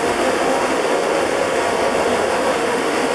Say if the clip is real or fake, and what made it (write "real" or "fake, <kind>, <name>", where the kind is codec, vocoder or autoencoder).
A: fake, autoencoder, DAC-VAE